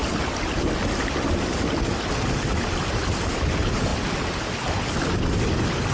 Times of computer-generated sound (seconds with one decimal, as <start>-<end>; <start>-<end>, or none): none